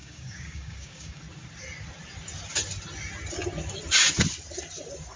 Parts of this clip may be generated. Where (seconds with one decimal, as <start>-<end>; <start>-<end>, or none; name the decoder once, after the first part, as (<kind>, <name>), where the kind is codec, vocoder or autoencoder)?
0.0-1.2 (codec, DAC)